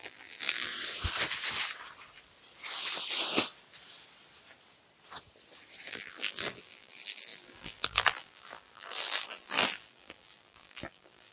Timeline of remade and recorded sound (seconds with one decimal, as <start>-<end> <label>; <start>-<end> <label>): 0.0-0.7 remade; 0.7-5.9 recorded; 5.9-11.3 remade